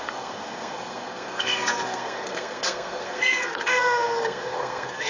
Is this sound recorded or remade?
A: remade